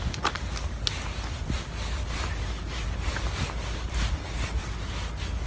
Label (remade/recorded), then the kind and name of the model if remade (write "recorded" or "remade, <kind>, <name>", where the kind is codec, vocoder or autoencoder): recorded